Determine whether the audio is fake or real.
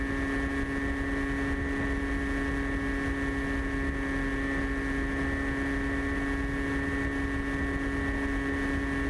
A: real